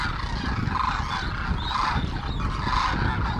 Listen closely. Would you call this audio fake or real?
real